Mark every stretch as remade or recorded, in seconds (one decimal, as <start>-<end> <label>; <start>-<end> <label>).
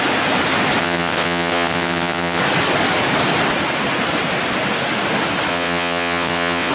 0.0-0.8 recorded; 0.8-2.4 remade; 2.4-5.5 recorded; 5.5-6.7 remade